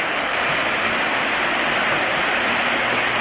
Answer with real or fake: real